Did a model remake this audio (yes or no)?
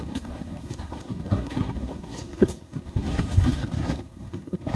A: yes